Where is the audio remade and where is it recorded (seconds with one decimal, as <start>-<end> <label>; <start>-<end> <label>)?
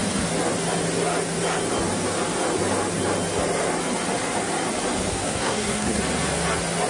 0.0-5.1 recorded; 5.1-6.0 remade; 6.0-6.9 recorded